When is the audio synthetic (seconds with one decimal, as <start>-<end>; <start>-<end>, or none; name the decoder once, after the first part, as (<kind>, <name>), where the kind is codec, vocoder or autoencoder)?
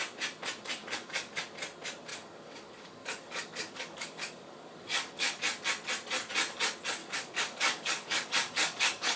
0.8-1.4 (codec, DAC); 2.1-5.4; 7.0-9.2